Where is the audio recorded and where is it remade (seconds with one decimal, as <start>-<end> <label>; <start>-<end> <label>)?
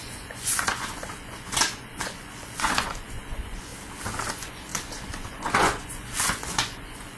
0.0-3.7 remade; 3.7-4.3 recorded; 4.3-7.2 remade